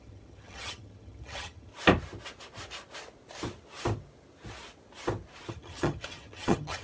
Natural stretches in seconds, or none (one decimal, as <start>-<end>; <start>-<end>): 1.7-5.5